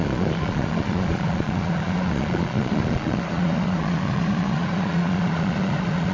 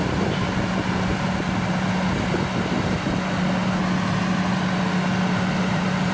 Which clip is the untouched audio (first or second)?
second